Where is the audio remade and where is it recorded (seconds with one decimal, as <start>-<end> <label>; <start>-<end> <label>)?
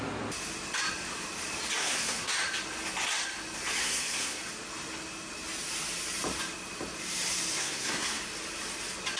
0.0-1.8 recorded; 1.8-2.3 remade; 2.3-3.8 recorded; 3.8-4.4 remade; 4.4-7.6 recorded; 7.6-8.2 remade; 8.2-9.2 recorded